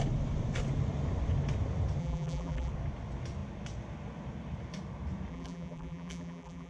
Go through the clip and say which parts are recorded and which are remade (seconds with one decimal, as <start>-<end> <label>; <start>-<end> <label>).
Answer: 0.0-2.0 recorded; 2.0-2.7 remade; 2.7-5.3 recorded; 5.3-6.7 remade